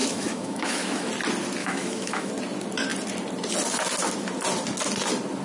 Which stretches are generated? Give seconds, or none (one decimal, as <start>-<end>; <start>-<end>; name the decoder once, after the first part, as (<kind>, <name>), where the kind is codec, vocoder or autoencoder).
0.0-1.1 (autoencoder, DAC-VAE); 1.6-2.3